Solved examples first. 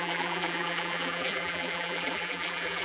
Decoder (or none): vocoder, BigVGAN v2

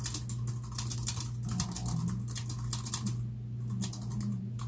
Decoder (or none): none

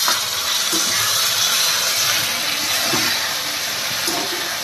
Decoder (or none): none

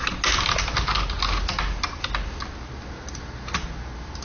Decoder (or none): none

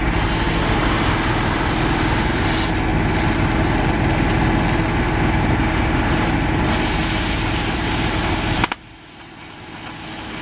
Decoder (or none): none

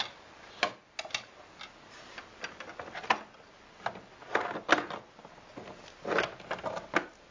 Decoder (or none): none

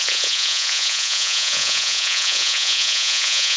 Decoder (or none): vocoder, Vocos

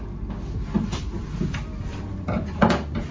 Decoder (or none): none